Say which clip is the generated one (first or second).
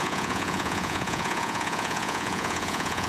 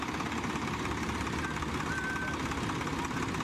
first